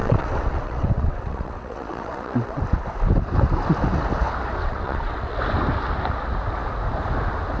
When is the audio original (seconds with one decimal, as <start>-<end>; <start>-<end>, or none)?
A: 2.6-4.6; 5.4-7.6